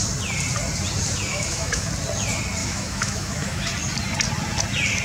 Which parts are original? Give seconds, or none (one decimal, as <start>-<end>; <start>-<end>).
0.0-1.3; 1.9-2.6; 3.7-5.0